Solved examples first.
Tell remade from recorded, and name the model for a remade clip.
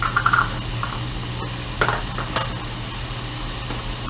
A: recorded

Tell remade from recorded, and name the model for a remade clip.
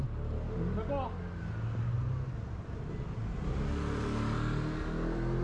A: recorded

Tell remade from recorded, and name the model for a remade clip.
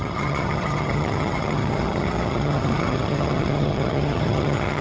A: remade, vocoder, HiFi-GAN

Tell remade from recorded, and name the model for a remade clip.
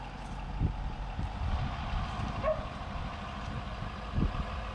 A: recorded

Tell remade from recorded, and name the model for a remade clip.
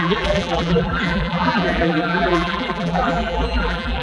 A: remade, vocoder, BigVGAN v2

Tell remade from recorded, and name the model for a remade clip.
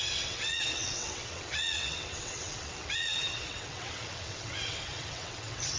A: remade, vocoder, WaveNeXt